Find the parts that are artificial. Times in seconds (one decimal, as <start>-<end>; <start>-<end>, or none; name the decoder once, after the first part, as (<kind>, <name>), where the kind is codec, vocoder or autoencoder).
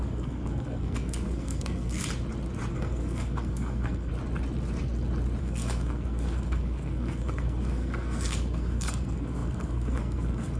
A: 0.0-2.0 (codec, SNAC); 2.7-4.1; 5.4-10.6